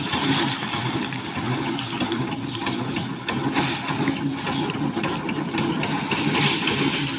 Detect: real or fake real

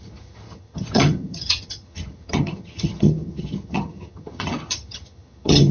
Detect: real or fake fake